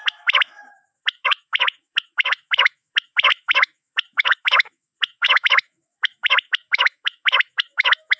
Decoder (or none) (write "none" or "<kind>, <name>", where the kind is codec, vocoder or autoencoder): autoencoder, DAC-VAE